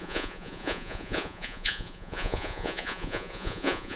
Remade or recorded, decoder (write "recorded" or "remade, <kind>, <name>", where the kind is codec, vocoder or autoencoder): remade, vocoder, Vocos